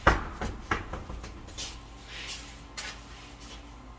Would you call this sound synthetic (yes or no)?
no